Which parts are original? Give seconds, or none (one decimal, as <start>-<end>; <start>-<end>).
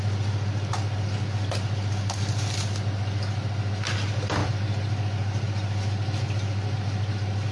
0.0-7.5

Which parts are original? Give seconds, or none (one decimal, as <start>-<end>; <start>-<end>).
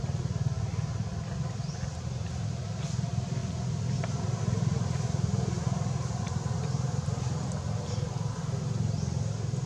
0.0-9.7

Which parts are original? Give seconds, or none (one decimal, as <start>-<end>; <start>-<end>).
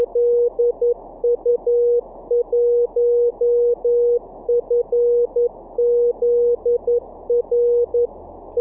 0.6-1.5; 3.3-7.9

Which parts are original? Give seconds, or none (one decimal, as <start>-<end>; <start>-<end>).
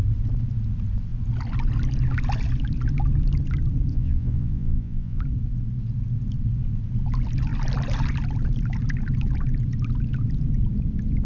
0.0-3.9; 5.2-11.2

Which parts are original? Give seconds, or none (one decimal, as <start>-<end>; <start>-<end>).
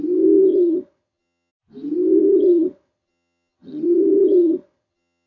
0.0-0.5; 1.5-2.2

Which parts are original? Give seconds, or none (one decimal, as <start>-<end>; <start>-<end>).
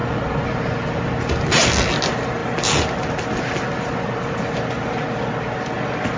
0.0-6.2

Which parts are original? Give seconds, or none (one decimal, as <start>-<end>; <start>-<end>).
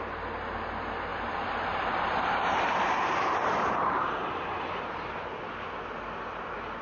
0.0-1.1; 5.2-6.8